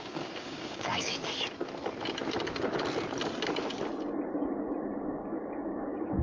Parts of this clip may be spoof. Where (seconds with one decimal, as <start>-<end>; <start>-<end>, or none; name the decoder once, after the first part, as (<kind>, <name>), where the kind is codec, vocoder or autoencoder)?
0.0-1.3 (codec, DAC); 5.0-6.2